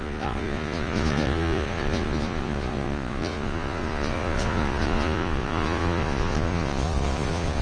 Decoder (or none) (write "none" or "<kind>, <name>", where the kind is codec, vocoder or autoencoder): vocoder, Vocos